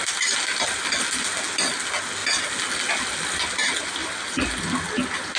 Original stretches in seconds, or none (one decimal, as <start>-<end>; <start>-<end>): 0.0-5.4